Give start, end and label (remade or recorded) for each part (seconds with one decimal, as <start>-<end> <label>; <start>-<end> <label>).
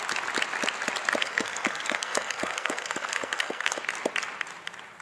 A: 0.0-1.2 recorded; 1.2-3.8 remade; 3.8-5.0 recorded